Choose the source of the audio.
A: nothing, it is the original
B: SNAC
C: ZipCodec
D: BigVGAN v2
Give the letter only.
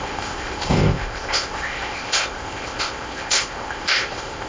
C